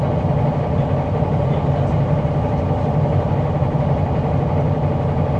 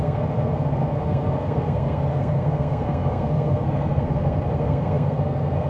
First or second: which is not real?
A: second